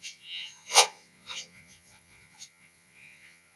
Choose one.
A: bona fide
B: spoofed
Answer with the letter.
B